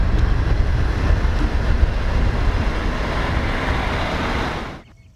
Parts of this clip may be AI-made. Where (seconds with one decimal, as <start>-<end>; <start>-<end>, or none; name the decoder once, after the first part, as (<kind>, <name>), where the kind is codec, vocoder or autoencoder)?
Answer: none